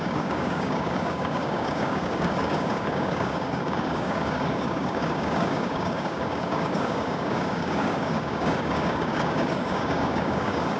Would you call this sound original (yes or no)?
no